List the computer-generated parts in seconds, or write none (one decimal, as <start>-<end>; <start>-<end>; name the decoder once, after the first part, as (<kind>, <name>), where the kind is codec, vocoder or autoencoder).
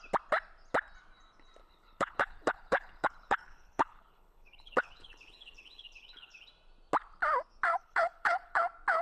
1.6-6.5 (codec, HILCodec); 7.8-8.6